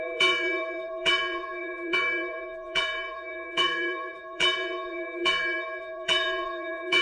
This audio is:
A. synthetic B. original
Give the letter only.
A